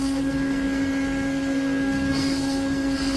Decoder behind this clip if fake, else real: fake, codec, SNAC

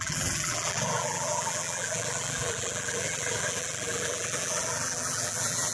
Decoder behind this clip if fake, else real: fake, vocoder, BigVGAN v2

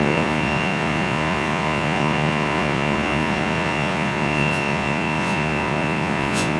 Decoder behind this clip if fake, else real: fake, vocoder, Vocos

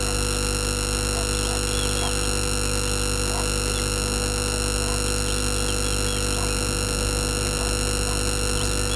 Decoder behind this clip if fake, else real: real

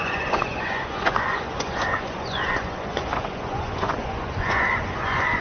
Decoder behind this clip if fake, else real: fake, vocoder, Vocos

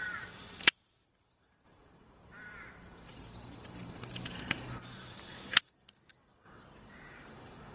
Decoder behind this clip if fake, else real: fake, vocoder, BigVGAN v2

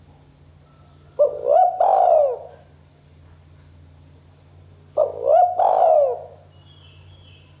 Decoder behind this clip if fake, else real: real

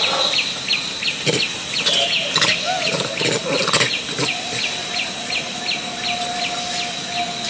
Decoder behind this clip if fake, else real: real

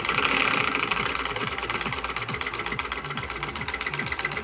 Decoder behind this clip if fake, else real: real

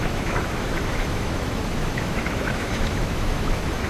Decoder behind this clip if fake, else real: fake, autoencoder, DAC-VAE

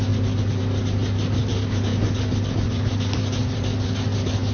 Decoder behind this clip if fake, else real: real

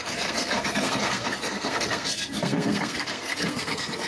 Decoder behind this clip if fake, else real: fake, codec, SNAC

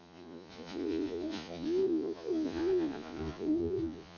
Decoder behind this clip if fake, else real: fake, vocoder, Vocos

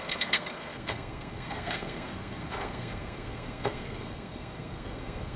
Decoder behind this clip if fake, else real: fake, codec, SNAC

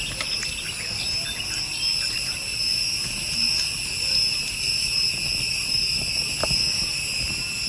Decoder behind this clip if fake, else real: real